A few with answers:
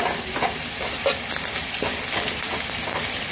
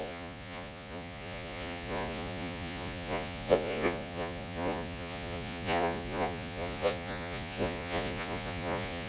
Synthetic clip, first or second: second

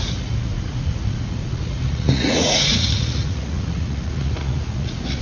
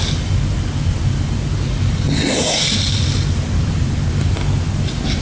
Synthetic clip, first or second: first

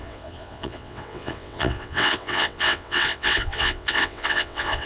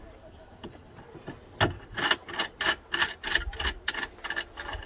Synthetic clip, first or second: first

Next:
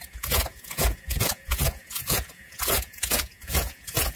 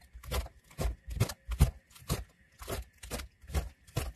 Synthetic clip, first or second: first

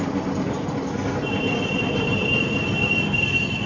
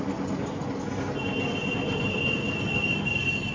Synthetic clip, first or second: first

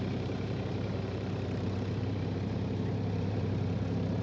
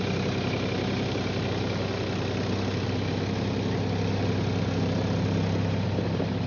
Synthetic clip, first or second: first